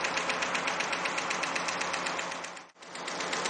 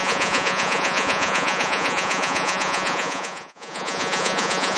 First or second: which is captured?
first